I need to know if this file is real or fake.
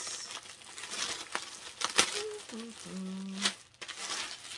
real